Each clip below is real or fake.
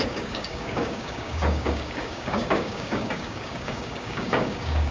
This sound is fake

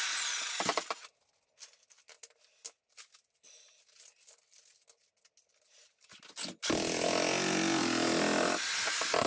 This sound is real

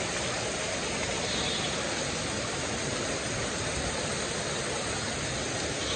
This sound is real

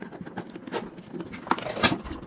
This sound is real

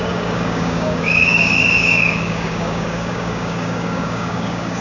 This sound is fake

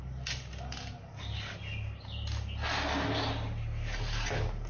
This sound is real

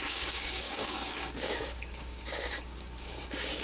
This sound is fake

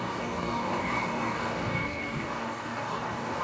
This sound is fake